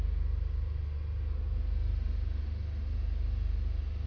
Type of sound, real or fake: real